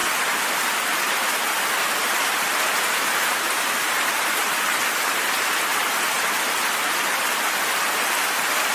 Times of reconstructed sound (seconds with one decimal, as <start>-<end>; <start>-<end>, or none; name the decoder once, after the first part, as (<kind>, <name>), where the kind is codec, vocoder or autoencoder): 3.4-4.4 (vocoder, BigVGAN v2)